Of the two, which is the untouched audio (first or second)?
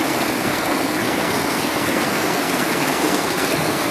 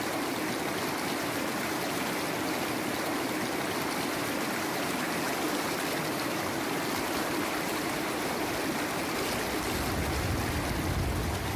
second